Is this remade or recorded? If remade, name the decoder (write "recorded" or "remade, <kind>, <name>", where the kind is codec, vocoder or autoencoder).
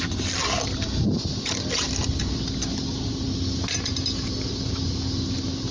recorded